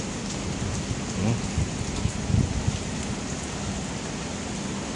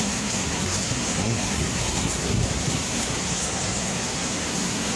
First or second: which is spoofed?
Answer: second